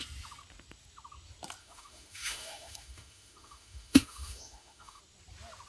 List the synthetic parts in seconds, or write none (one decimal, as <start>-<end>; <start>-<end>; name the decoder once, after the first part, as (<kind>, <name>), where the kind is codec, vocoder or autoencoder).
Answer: 1.6-5.0 (autoencoder, DAC-VAE)